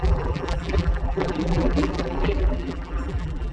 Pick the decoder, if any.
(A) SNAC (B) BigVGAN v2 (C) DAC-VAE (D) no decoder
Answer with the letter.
B